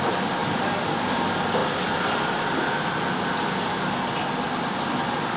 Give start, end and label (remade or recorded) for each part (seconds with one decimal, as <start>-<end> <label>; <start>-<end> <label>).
0.0-5.4 recorded